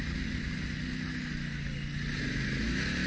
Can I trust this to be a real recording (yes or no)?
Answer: yes